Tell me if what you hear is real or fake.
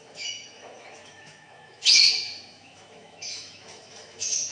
fake